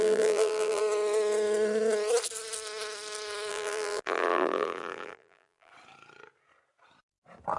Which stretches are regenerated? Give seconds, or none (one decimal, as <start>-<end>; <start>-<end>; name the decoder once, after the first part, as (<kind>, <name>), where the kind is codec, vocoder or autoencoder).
0.0-0.8 (vocoder, BigVGAN v2); 3.5-5.7